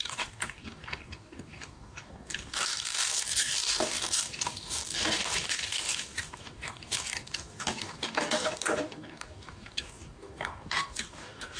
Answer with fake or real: fake